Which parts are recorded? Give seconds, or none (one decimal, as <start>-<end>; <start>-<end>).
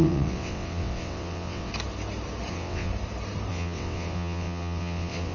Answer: 1.7-2.5; 2.9-3.5